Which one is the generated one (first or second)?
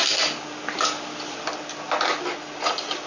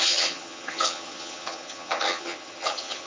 second